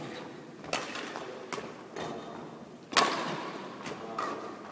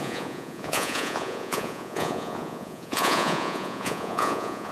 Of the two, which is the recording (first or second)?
first